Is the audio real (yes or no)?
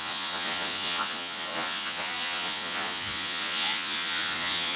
no